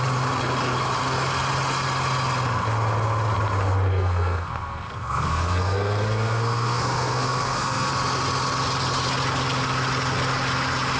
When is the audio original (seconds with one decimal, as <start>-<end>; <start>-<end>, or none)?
0.0-3.9; 7.9-11.0